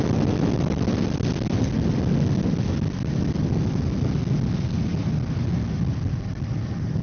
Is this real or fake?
real